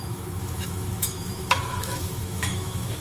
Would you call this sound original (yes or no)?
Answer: no